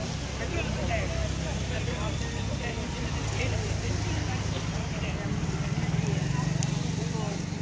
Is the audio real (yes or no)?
yes